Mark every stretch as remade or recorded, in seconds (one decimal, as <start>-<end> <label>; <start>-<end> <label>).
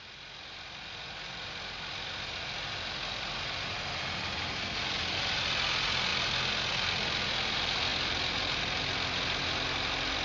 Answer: 0.0-10.2 recorded